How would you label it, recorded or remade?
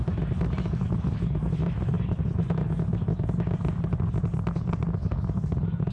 recorded